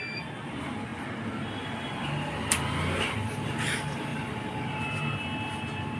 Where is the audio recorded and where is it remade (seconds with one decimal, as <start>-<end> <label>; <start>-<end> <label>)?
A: 0.0-6.0 recorded